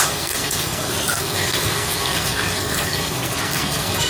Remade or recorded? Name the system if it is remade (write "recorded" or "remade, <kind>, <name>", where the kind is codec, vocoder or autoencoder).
remade, codec, SNAC